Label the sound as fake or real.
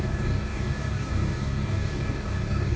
fake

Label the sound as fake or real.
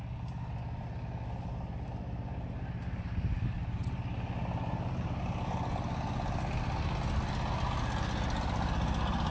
real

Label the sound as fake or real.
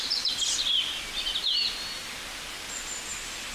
real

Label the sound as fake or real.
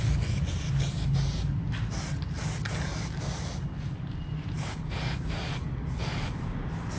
real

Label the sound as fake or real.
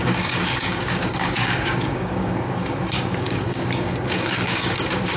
fake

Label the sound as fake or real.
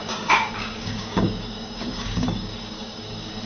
fake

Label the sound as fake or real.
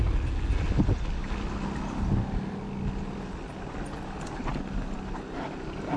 real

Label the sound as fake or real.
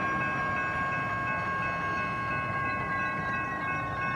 real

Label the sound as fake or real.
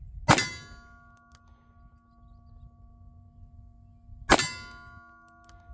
real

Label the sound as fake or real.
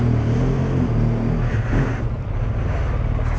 real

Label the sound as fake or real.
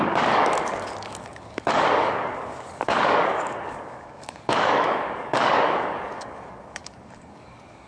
fake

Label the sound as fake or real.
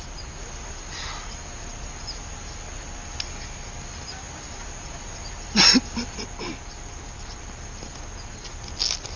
real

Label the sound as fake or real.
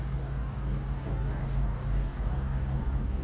fake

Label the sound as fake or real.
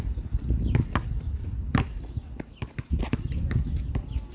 real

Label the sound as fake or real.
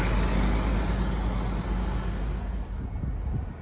real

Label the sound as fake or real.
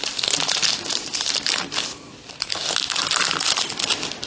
real